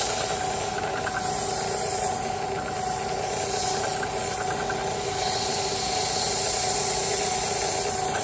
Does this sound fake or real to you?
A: real